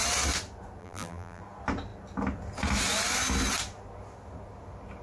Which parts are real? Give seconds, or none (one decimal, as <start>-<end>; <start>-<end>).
0.0-0.8; 1.4-5.0